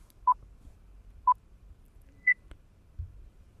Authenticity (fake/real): fake